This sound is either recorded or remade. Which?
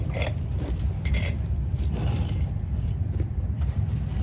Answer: remade